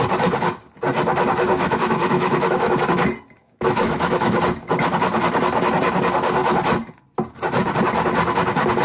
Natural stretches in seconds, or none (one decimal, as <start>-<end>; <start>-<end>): 0.0-1.5; 2.8-3.4; 4.4-8.8

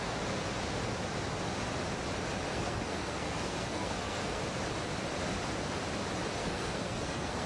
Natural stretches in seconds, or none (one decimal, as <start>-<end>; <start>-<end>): 0.0-2.5; 4.4-6.4

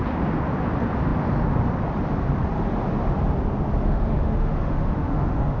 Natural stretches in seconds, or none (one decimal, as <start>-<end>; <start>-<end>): 0.0-3.8

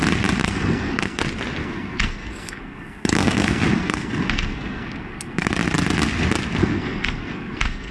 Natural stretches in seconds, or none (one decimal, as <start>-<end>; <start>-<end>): 0.0-0.4; 1.2-1.6; 5.5-6.6

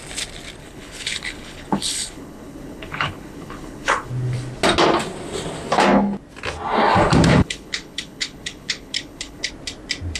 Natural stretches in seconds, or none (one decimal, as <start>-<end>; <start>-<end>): 0.0-0.6; 4.1-7.3; 9.5-10.2

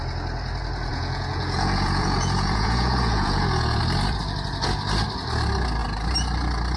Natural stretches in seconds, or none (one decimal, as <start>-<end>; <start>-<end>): 0.0-0.9; 3.8-6.8